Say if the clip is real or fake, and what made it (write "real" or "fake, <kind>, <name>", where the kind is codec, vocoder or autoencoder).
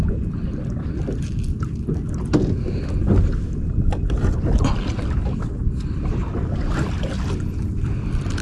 real